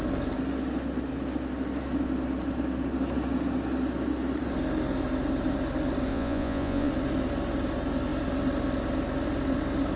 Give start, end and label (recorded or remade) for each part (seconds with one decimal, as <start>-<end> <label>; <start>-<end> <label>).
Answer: 0.0-6.1 recorded; 6.1-6.9 remade; 6.9-10.0 recorded